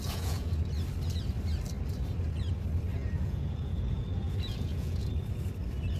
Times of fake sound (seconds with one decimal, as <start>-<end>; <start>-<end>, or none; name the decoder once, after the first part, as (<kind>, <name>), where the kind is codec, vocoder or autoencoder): 0.0-0.5 (vocoder, Vocos); 2.9-5.1